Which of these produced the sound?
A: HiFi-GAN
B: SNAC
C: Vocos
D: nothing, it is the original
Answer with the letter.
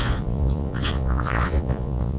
C